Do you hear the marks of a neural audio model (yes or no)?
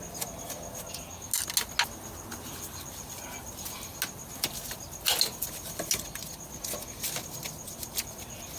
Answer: no